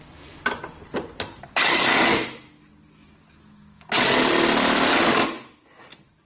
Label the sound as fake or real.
real